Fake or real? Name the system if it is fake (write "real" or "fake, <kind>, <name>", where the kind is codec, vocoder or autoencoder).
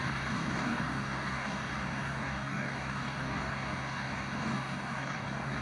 fake, codec, DAC